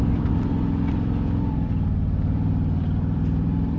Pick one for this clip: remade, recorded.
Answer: remade